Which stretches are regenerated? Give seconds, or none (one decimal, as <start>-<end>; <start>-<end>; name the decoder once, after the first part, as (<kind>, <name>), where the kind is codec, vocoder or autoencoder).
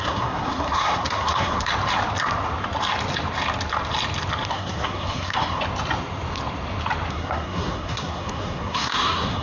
0.0-1.7 (codec, SNAC); 4.5-5.6; 7.1-9.4